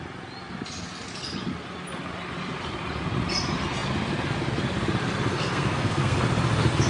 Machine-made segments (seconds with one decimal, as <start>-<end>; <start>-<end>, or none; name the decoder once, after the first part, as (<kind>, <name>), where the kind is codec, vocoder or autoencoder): 5.3-6.2 (codec, SNAC)